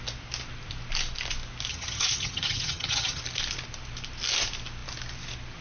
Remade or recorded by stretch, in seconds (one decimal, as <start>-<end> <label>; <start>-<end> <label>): 0.0-1.7 recorded; 1.7-3.2 remade; 3.2-5.6 recorded